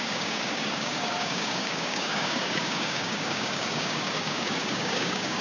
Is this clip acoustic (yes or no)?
no